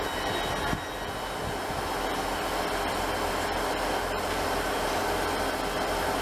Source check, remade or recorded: recorded